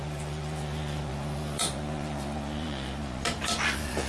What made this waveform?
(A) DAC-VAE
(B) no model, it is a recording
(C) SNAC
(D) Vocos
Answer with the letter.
D